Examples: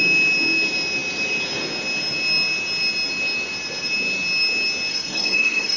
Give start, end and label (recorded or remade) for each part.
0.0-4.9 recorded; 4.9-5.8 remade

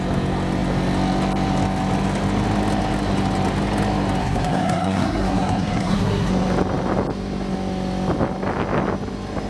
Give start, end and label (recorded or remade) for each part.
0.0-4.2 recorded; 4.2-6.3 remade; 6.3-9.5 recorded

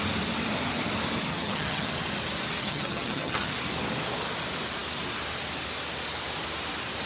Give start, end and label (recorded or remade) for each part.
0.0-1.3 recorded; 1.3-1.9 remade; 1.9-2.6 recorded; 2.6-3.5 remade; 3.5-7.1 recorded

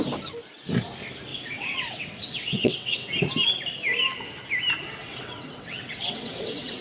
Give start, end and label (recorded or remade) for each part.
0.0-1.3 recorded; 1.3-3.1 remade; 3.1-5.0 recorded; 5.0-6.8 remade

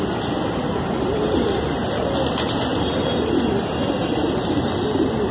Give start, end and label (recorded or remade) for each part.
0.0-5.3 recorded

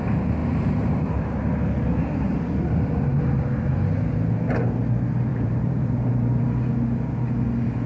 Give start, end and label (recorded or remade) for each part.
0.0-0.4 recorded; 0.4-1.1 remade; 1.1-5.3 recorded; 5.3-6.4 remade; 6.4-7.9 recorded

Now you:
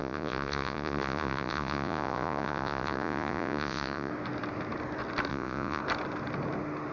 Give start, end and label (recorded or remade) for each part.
0.0-4.1 remade; 4.1-5.3 recorded; 5.3-5.8 remade; 5.8-6.9 recorded

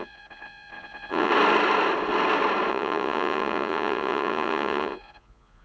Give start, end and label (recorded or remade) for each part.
0.0-1.3 remade; 1.3-2.7 recorded; 2.7-5.6 remade